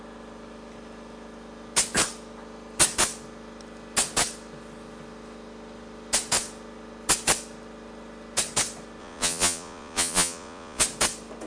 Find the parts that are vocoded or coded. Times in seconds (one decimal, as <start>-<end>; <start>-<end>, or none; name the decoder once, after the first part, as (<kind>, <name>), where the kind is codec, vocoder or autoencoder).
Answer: 9.0-10.8 (vocoder, Vocos)